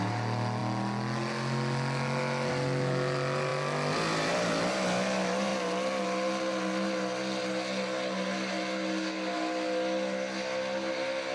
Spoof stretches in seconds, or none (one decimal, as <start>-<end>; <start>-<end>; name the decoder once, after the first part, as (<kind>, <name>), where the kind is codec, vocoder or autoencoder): none